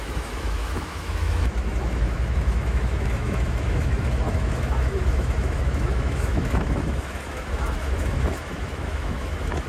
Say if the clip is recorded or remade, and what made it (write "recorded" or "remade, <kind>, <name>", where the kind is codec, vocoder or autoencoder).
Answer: remade, autoencoder, DAC-VAE